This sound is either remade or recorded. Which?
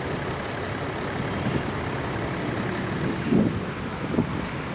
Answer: recorded